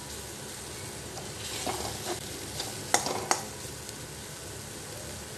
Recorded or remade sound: recorded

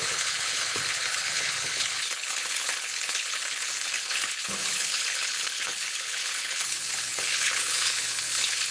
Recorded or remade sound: remade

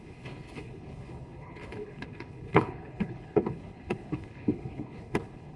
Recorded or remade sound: remade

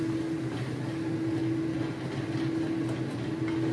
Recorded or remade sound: recorded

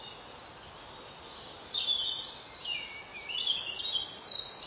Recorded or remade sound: recorded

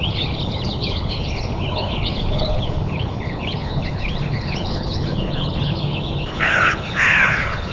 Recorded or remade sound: remade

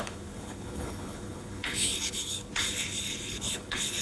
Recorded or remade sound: remade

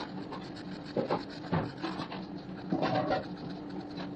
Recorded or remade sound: recorded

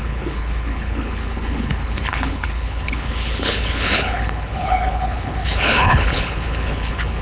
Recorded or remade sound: remade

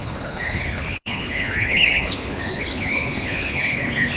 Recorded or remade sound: remade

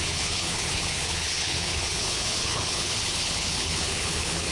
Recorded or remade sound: remade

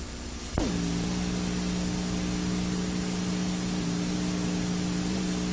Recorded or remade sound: recorded